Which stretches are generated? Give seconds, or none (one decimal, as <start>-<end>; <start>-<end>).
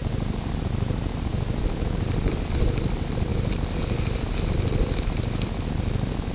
none